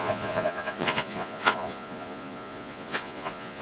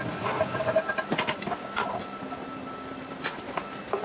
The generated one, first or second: first